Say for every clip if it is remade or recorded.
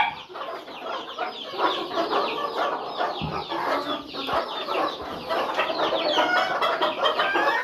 recorded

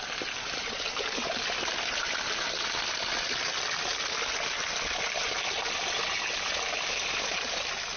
recorded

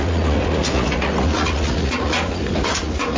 remade